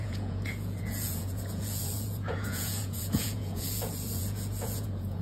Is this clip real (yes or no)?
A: no